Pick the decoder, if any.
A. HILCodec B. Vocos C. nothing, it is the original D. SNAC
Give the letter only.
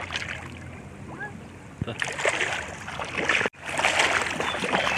C